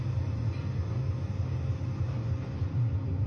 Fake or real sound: real